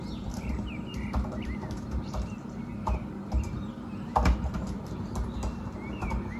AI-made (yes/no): yes